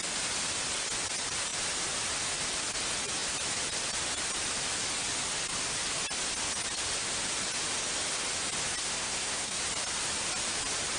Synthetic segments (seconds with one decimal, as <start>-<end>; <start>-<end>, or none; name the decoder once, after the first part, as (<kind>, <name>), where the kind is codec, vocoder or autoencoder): 8.8-9.6 (codec, SNAC)